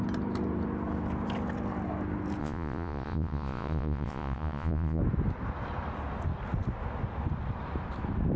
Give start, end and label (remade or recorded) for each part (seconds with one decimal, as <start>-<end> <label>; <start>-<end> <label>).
0.0-2.4 recorded; 2.4-5.0 remade; 5.0-8.4 recorded